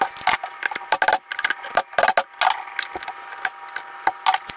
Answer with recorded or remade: recorded